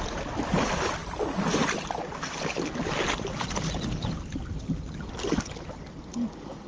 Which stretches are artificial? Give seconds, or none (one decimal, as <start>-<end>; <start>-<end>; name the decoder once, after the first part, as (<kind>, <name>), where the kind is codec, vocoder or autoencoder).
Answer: 0.0-6.7 (vocoder, BigVGAN v2)